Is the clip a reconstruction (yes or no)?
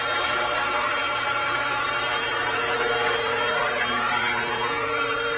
yes